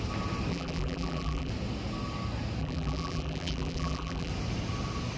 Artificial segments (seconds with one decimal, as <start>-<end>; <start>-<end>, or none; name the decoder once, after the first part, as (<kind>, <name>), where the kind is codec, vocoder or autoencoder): 0.5-1.5 (vocoder, BigVGAN v2); 2.6-4.3